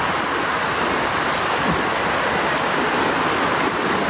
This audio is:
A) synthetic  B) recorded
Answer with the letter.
B